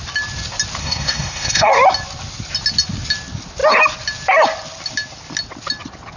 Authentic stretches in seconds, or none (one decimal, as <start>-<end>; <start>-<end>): 0.0-0.8; 1.7-6.2